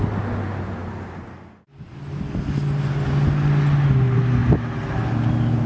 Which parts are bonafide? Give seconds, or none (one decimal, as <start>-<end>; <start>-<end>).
0.0-5.7